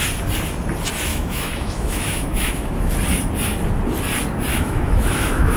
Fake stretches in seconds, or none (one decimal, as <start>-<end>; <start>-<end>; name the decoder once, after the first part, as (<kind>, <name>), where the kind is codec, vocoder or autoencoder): 1.1-2.9 (autoencoder, DAC-VAE); 4.5-5.6

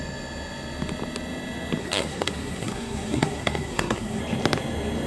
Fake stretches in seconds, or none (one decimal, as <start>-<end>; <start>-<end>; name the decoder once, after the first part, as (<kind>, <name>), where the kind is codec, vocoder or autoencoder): 1.8-4.2 (codec, SNAC)